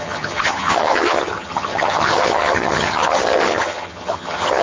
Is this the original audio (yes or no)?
no